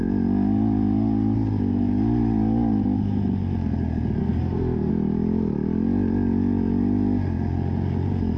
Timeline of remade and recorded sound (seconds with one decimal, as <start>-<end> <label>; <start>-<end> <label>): 0.0-4.2 recorded; 4.2-4.9 remade; 4.9-8.4 recorded